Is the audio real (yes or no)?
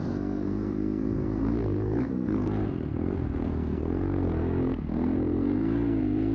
no